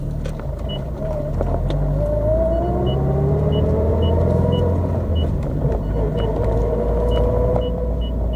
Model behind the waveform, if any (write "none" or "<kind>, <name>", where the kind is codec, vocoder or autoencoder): none